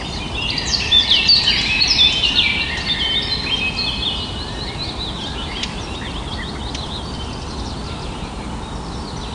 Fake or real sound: real